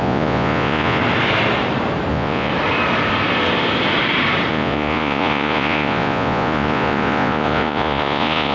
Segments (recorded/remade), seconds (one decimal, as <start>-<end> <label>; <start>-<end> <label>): 0.0-1.0 remade; 1.0-2.1 recorded; 2.1-2.5 remade; 2.5-4.5 recorded; 4.5-8.5 remade